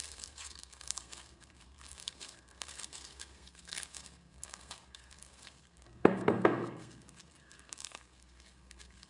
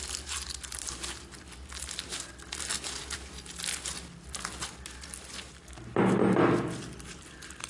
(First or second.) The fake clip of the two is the first